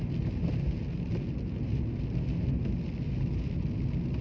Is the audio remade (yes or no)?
no